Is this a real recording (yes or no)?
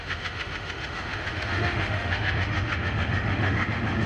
no